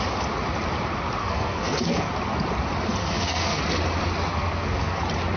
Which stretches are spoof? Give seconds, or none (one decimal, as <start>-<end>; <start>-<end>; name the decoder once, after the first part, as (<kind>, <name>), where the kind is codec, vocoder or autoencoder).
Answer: 1.2-2.1 (codec, SNAC); 3.0-3.6; 4.3-5.0